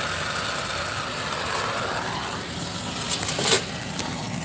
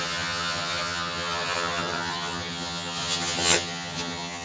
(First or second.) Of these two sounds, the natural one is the first